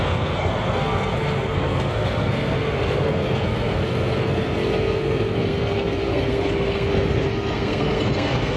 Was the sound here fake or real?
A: fake